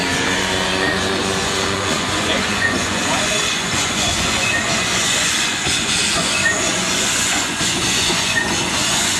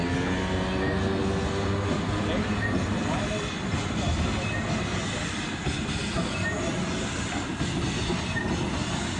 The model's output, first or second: first